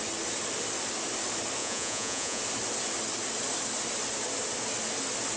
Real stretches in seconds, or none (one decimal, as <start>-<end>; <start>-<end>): 0.0-1.6; 2.4-5.4